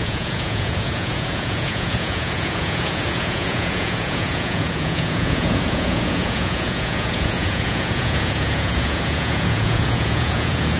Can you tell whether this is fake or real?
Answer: fake